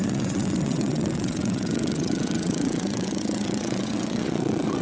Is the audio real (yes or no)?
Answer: no